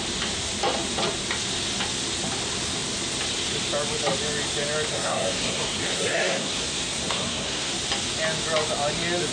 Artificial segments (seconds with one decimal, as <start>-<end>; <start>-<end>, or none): 4.9-7.7